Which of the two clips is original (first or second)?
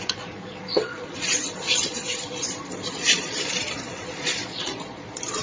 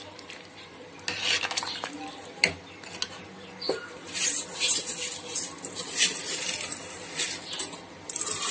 second